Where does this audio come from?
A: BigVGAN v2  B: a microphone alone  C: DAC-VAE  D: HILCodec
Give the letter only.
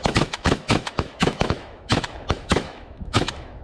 C